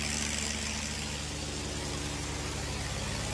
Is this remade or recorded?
recorded